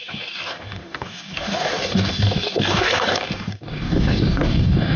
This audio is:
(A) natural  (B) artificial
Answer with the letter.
B